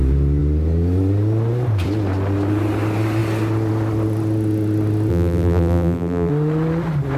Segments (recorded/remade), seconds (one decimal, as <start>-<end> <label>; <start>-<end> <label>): 0.0-5.1 recorded; 5.1-6.3 remade; 6.3-7.2 recorded